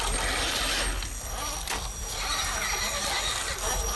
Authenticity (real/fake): real